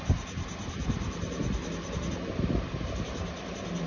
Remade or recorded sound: recorded